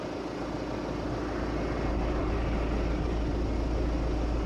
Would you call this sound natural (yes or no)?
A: yes